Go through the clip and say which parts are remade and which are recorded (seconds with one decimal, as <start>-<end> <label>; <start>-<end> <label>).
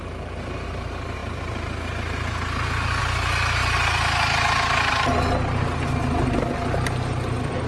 0.0-7.7 recorded